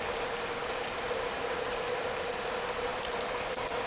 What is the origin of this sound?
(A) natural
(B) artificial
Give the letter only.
A